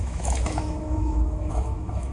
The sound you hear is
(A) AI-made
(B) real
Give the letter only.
A